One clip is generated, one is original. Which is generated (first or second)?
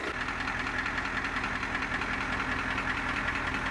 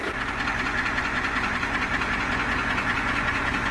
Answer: second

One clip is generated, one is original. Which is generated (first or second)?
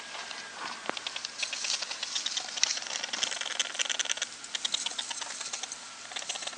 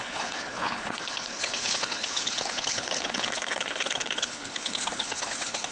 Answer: second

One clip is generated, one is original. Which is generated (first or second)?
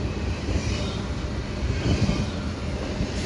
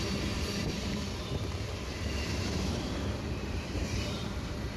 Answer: second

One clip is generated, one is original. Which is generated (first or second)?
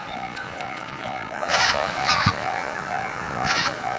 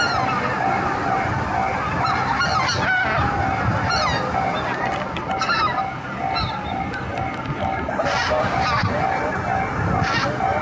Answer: first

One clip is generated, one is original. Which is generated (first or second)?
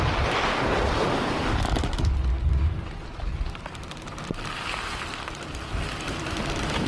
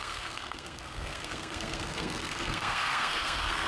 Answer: second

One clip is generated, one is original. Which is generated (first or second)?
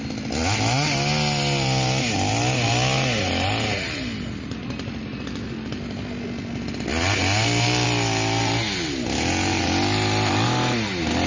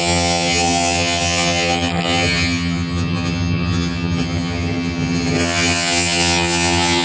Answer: second